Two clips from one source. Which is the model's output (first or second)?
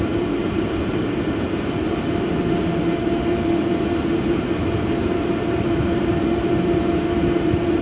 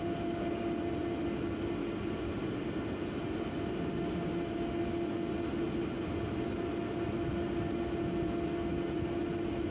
first